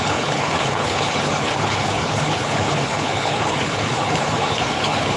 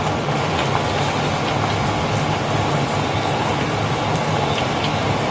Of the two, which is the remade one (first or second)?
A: first